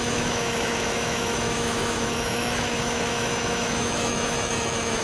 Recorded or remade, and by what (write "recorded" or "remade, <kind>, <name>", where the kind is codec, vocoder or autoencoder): remade, autoencoder, DAC-VAE